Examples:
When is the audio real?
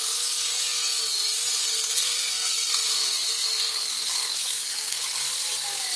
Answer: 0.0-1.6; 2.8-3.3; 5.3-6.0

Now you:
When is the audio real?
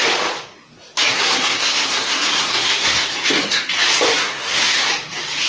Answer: 0.0-1.1; 3.7-4.2; 4.8-5.5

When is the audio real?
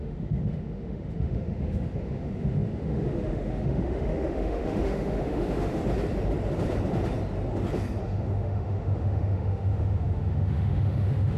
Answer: 5.8-8.0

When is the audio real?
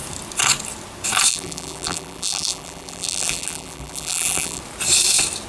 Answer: 0.0-1.3; 4.6-5.5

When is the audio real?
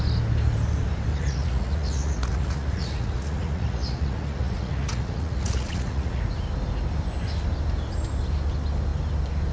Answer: 0.0-1.1; 6.2-9.5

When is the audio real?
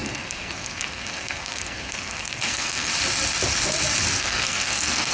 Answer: 2.9-4.2